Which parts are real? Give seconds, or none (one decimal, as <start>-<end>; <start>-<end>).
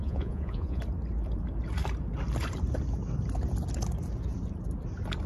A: 0.8-5.3